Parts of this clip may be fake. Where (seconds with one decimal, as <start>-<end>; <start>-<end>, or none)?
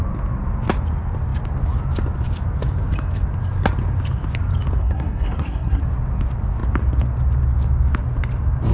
4.8-5.8